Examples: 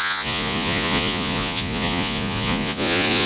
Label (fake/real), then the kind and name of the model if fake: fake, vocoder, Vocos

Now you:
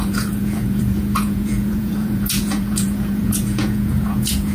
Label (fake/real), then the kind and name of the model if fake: fake, vocoder, Vocos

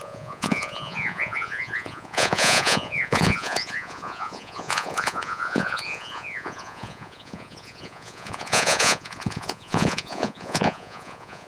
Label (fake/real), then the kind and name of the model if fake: fake, vocoder, Vocos